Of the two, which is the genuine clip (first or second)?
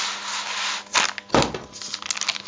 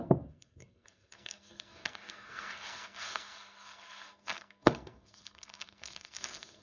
first